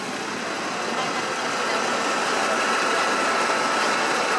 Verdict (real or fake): real